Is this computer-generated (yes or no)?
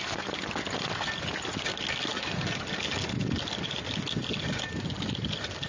no